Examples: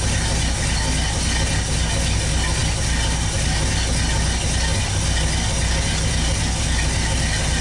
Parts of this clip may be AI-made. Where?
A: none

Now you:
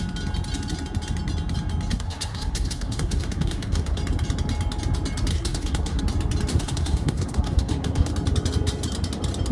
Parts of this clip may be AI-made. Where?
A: 1.9-4.0 (codec, SNAC); 5.3-6.0; 6.5-8.1

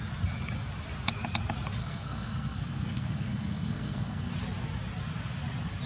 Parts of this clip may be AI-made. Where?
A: 1.8-4.3 (codec, SNAC)